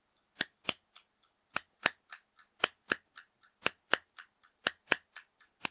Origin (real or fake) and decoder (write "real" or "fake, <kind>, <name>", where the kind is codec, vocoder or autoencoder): real